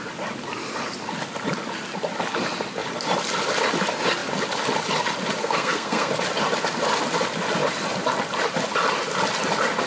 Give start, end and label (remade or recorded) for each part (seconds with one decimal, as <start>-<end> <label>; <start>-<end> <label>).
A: 0.0-5.4 recorded; 5.4-6.1 remade; 6.1-9.9 recorded